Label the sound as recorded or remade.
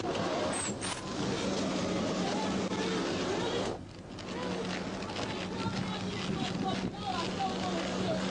recorded